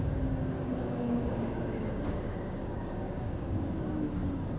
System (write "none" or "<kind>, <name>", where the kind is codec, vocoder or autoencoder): codec, DAC